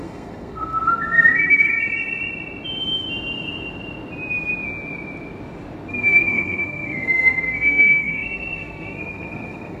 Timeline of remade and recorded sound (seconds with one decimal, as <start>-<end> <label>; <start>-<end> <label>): 0.0-1.7 remade; 1.7-5.9 recorded; 5.9-9.8 remade